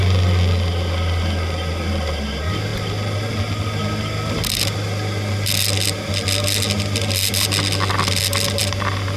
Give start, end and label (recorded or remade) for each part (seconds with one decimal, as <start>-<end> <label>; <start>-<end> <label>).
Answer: 0.0-9.2 recorded